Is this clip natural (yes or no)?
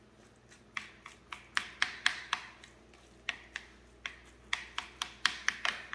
yes